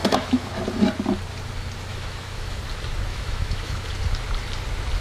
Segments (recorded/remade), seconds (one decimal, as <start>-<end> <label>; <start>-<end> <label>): 0.0-0.5 remade; 0.5-1.9 recorded; 1.9-2.6 remade; 2.6-3.1 recorded; 3.1-3.9 remade; 3.9-5.0 recorded